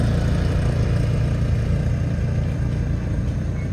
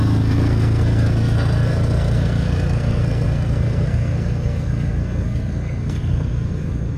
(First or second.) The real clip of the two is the first